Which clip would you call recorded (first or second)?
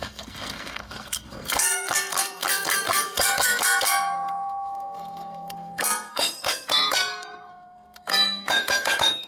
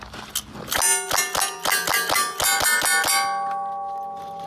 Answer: second